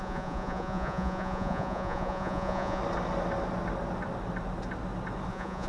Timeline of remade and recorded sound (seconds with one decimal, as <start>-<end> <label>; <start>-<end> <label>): 0.0-2.8 remade; 2.8-5.3 recorded; 5.3-5.7 remade